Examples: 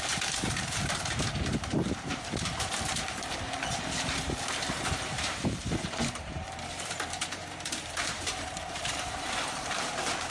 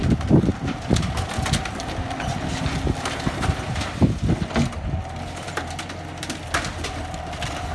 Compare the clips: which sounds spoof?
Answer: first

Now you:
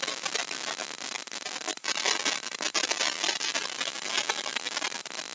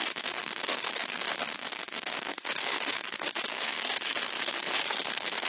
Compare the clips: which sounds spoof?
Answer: second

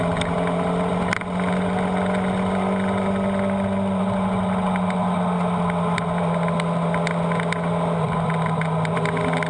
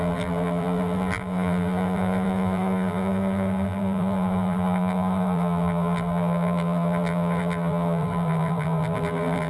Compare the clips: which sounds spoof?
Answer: second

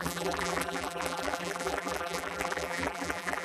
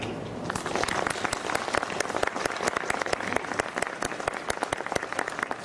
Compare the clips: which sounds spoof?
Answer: first